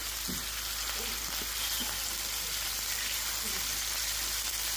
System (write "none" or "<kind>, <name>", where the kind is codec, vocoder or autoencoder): none